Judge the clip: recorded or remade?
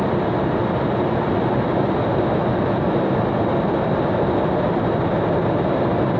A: recorded